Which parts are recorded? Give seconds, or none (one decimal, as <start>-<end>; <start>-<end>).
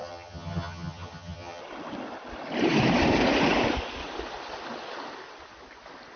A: 1.6-6.2